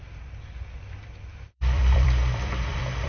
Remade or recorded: remade